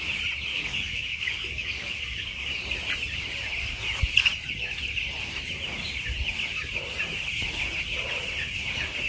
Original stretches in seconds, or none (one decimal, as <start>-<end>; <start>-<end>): 0.0-0.5; 2.5-9.1